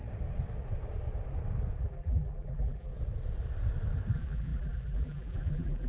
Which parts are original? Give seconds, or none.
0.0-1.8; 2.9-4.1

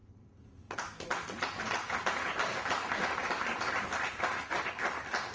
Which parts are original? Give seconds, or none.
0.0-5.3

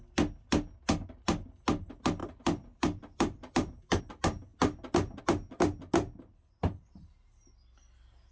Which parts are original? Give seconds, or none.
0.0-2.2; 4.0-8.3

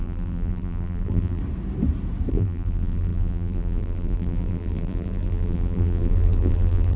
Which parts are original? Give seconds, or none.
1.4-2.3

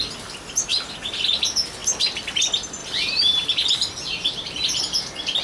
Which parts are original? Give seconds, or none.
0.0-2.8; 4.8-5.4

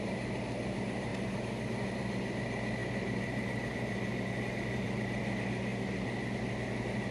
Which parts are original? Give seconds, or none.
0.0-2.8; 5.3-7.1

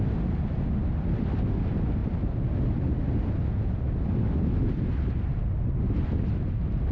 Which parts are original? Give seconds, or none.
0.0-6.9

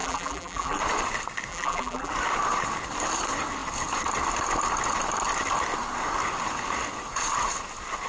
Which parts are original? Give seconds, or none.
0.8-1.5; 2.1-8.1